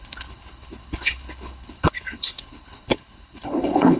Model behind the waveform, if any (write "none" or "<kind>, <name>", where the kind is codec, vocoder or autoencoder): codec, HILCodec